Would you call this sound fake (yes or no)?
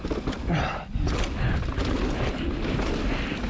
no